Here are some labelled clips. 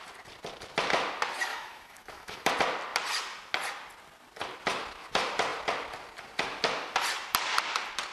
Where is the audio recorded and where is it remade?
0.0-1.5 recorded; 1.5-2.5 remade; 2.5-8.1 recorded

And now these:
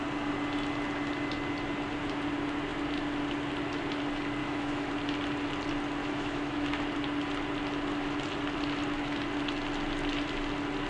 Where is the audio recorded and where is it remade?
0.0-4.4 recorded; 4.4-4.9 remade; 4.9-6.0 recorded; 6.0-6.8 remade; 6.8-10.9 recorded

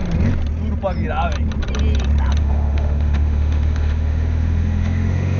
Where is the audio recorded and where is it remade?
0.0-2.4 recorded; 2.4-5.4 remade